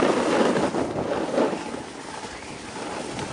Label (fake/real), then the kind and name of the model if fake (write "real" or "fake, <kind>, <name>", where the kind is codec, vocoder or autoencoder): real